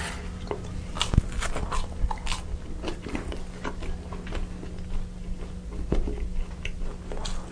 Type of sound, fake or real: real